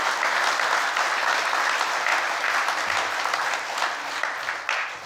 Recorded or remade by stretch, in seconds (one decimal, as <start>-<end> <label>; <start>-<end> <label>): 0.0-5.1 recorded